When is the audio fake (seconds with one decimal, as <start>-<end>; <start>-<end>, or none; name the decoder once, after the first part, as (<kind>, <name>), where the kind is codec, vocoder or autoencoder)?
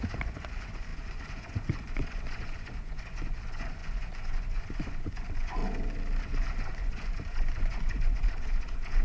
0.0-5.6 (vocoder, Vocos); 6.2-9.0